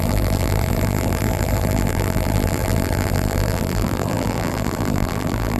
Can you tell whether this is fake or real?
fake